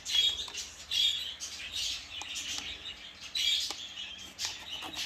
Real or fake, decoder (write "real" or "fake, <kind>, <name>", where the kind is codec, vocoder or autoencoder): real